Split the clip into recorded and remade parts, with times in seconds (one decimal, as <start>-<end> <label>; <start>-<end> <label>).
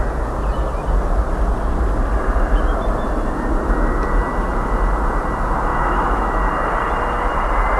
0.0-5.7 recorded; 5.7-6.4 remade; 6.4-7.8 recorded